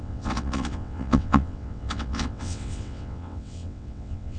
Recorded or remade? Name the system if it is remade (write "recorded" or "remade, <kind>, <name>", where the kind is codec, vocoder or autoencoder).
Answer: remade, vocoder, WaveNeXt